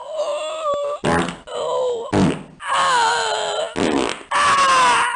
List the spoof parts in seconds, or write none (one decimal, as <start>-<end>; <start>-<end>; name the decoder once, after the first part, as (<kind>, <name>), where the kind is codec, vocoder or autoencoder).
none